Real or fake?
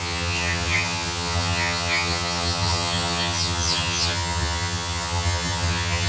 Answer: fake